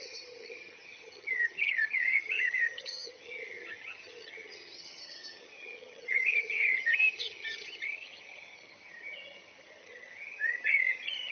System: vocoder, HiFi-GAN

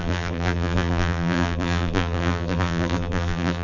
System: vocoder, BigVGAN v2